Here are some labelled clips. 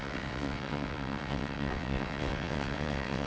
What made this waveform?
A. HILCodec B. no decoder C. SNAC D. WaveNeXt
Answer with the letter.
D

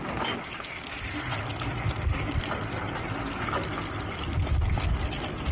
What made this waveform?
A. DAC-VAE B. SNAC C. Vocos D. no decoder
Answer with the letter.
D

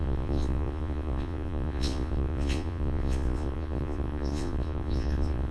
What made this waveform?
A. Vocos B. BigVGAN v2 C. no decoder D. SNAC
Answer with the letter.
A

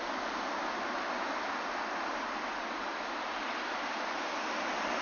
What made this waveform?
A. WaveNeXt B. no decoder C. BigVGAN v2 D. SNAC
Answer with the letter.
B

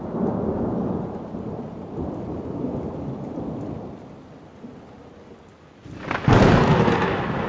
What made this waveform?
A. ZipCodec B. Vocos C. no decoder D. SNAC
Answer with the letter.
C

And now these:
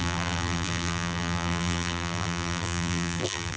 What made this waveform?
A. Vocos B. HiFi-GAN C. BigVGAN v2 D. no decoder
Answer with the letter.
C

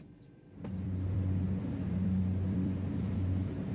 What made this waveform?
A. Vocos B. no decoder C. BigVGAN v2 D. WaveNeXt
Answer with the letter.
C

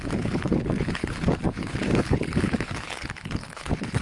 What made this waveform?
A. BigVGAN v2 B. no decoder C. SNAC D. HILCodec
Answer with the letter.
D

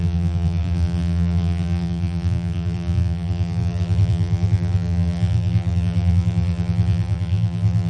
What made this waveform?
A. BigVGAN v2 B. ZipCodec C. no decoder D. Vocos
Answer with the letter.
A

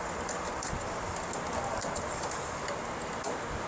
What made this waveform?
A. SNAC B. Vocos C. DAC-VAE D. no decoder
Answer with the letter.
D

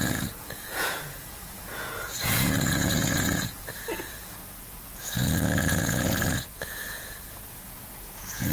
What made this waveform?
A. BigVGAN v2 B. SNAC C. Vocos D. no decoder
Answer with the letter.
C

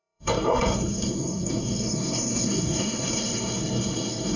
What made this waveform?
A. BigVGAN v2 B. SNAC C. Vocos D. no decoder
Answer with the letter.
B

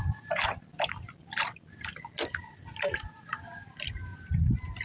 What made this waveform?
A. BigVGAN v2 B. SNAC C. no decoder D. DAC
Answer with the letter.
C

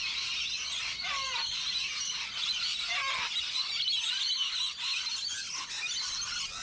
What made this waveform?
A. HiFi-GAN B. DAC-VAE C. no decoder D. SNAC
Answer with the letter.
C